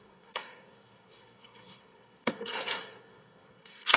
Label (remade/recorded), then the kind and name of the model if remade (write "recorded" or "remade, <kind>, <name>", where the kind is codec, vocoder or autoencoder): remade, codec, SNAC